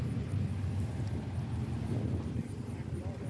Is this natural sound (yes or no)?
yes